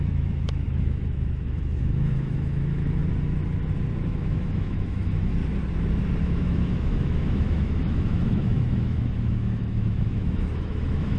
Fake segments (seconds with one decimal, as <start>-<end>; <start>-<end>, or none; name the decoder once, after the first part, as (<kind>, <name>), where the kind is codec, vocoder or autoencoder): 0.0-3.0 (autoencoder, DAC-VAE); 4.1-5.4; 6.2-11.2